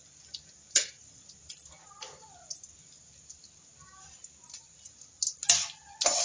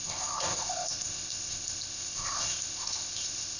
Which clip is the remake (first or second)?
second